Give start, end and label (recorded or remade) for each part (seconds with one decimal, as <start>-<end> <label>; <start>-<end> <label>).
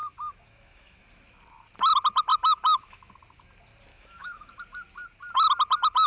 0.0-1.0 remade; 1.0-2.3 recorded; 2.3-3.1 remade; 3.1-3.9 recorded; 3.9-4.5 remade; 4.5-6.1 recorded